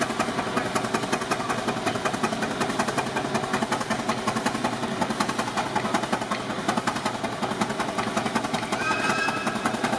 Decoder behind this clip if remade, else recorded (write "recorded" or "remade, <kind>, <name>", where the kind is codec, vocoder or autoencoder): recorded